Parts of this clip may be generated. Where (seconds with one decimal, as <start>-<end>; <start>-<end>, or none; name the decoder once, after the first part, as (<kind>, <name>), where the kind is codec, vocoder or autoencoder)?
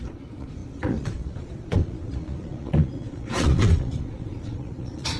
0.0-5.2 (vocoder, Vocos)